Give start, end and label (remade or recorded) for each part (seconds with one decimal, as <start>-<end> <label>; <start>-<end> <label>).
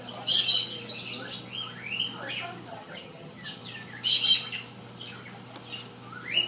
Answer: 0.0-2.7 recorded; 2.7-3.6 remade; 3.6-6.5 recorded